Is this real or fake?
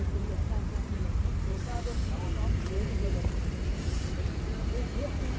fake